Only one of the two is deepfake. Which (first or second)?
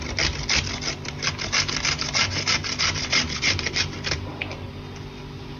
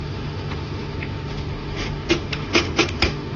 second